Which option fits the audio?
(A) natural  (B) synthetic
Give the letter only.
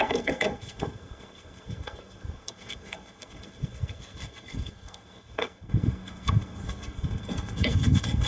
B